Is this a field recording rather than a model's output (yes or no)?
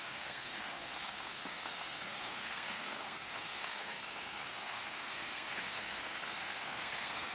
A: no